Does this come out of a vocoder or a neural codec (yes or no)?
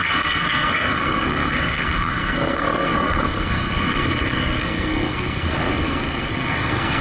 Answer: yes